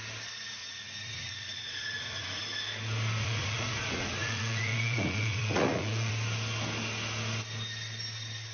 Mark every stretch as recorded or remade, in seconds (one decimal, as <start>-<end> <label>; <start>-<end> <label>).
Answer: 0.0-0.6 recorded; 0.6-2.4 remade; 2.4-3.2 recorded; 3.2-6.1 remade; 6.1-8.5 recorded